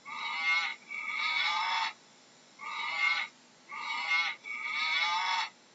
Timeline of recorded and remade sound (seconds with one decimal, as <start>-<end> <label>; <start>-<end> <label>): 0.0-0.7 recorded; 0.7-4.1 remade; 4.1-5.7 recorded